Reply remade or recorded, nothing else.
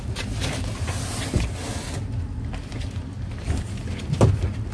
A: recorded